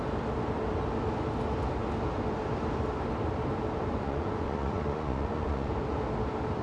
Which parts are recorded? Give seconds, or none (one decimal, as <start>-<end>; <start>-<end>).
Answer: 0.0-3.9; 5.7-6.6